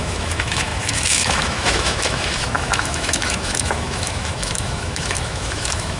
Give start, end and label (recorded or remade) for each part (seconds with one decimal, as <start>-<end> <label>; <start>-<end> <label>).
0.0-6.0 remade